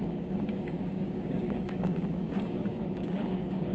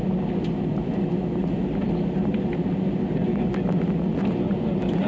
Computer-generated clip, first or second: first